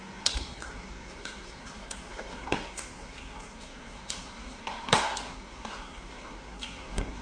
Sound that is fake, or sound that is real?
fake